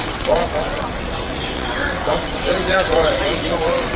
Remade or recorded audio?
remade